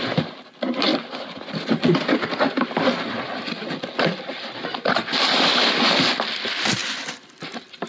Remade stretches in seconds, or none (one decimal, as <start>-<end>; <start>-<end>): none